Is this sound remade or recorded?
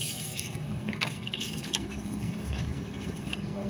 remade